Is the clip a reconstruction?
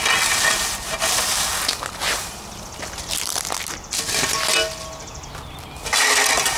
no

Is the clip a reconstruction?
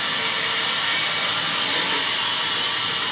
no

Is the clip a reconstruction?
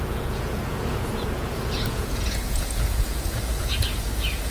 yes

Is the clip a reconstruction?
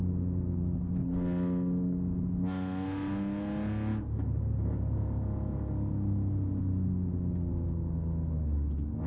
no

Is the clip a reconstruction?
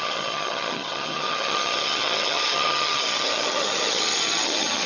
yes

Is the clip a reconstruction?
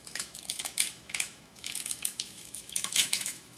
yes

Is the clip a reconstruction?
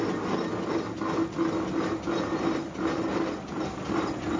no